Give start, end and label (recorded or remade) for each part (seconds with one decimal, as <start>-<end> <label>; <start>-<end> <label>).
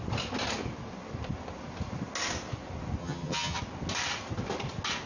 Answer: 0.0-3.0 recorded; 3.0-3.6 remade; 3.6-5.1 recorded